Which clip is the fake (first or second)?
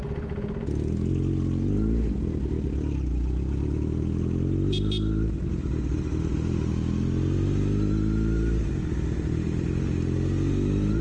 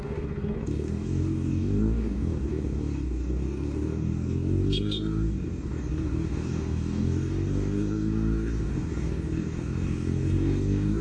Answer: second